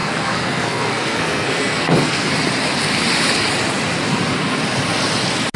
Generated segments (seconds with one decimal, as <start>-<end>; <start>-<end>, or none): 0.0-2.3